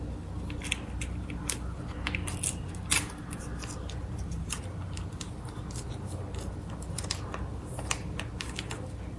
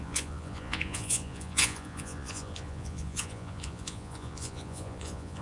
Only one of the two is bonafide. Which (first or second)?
first